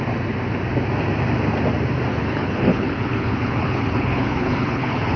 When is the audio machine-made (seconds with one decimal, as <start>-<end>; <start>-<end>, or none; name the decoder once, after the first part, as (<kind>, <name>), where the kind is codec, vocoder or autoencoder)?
2.1-5.2 (codec, HILCodec)